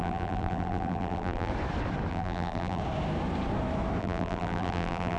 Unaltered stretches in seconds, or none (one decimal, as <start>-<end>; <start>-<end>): 1.5-2.1; 2.8-4.0